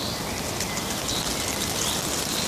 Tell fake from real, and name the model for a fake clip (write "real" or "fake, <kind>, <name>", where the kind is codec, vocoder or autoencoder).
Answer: real